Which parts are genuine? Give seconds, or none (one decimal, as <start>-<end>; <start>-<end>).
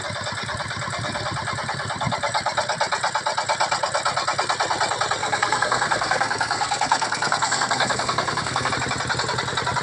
0.0-5.2; 8.7-9.8